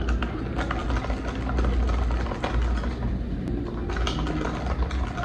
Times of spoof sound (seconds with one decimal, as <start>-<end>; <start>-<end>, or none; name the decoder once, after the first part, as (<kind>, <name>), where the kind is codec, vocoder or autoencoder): none